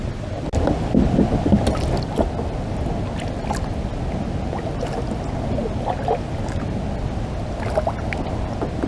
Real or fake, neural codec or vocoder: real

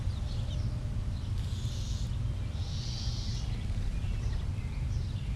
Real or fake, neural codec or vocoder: real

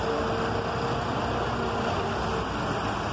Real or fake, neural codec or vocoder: real